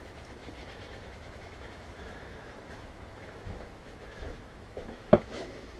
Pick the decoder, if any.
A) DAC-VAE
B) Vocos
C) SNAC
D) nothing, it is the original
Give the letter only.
A